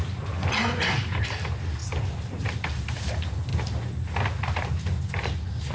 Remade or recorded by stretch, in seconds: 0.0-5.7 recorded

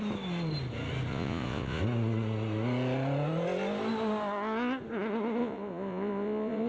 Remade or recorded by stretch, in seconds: 0.0-1.1 recorded; 1.1-1.8 remade; 1.8-5.4 recorded; 5.4-6.7 remade

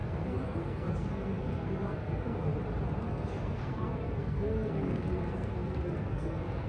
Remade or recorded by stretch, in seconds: 0.0-2.5 remade; 2.5-3.0 recorded; 3.0-6.7 remade

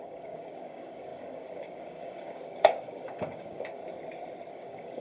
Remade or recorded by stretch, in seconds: 0.0-3.8 remade; 3.8-4.5 recorded; 4.5-5.0 remade

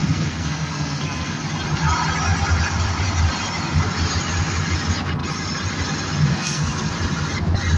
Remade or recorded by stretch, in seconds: 0.0-1.4 remade; 1.4-6.3 recorded; 6.3-6.9 remade; 6.9-7.8 recorded

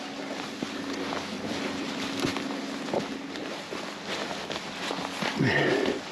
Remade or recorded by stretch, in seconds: 0.0-6.1 recorded